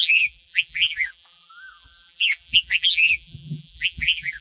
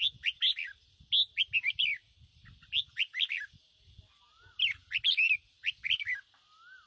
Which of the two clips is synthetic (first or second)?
first